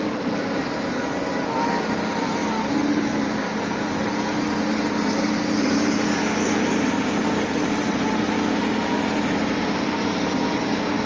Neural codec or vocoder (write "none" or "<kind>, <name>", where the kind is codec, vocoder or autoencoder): none